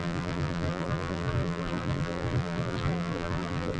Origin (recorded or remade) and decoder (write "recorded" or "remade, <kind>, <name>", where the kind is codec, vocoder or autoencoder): remade, vocoder, BigVGAN v2